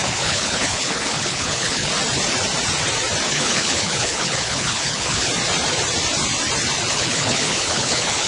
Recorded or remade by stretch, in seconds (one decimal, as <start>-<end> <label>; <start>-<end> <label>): 0.0-1.9 remade; 1.9-3.3 recorded; 3.3-5.3 remade; 5.3-6.9 recorded; 6.9-8.3 remade